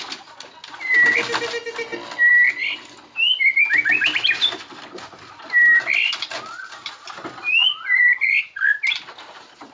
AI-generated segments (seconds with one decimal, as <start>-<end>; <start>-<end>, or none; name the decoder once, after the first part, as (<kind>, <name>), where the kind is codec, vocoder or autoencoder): none